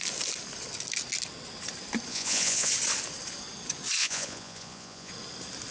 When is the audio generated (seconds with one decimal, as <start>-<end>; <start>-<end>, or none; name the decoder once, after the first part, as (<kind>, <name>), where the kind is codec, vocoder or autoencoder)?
2.1-2.7 (vocoder, Vocos); 4.0-5.1